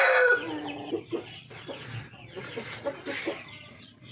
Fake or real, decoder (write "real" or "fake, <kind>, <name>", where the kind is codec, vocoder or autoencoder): real